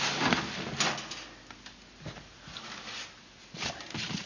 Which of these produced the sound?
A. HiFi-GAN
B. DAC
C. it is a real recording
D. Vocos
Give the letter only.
C